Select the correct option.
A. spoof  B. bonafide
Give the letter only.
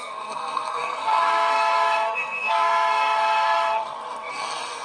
A